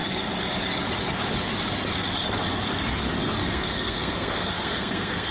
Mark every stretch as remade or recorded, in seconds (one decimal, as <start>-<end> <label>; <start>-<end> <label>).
0.0-3.4 recorded; 3.4-5.3 remade